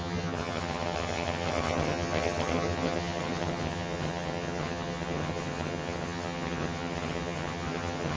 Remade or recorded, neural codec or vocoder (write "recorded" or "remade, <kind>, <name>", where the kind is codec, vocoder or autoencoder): remade, vocoder, HiFi-GAN